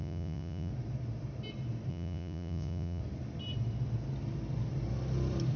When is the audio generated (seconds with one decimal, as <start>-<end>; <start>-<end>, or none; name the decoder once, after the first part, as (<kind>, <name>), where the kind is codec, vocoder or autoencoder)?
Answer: 0.0-0.7 (vocoder, Vocos); 1.9-3.0

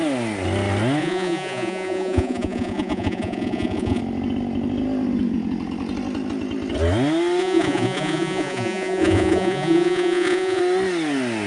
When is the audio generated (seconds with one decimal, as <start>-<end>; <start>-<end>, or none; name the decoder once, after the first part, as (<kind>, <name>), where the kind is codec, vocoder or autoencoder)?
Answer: 1.0-4.0 (vocoder, Vocos); 7.4-10.6

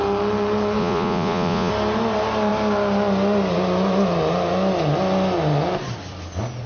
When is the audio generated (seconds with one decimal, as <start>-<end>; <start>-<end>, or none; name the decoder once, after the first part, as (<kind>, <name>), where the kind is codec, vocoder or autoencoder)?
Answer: 0.8-1.7 (vocoder, Vocos)

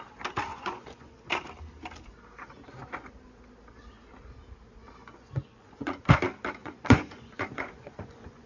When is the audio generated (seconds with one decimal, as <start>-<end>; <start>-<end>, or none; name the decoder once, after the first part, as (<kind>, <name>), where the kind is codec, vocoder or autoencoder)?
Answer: 0.5-1.3 (vocoder, Vocos); 5.0-6.0; 6.6-8.5

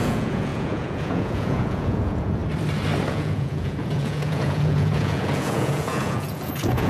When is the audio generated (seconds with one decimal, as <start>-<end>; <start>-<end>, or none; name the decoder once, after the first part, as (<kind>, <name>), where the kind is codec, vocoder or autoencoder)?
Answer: 0.0-2.4 (vocoder, Vocos); 3.1-6.9

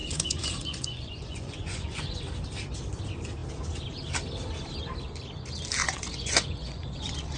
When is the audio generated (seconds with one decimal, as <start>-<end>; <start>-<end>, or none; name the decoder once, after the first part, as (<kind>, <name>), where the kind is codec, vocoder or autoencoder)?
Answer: 0.0-2.2 (vocoder, Vocos); 5.8-7.4

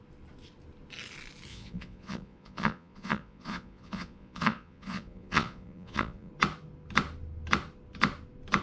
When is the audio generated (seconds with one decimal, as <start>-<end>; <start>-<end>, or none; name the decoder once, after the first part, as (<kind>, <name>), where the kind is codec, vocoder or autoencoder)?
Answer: 1.5-6.3 (vocoder, Vocos)

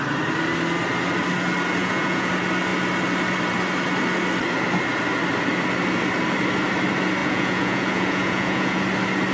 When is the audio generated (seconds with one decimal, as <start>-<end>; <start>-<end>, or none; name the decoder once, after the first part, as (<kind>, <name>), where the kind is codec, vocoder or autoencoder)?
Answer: 1.8-2.3 (vocoder, Vocos); 7.2-8.8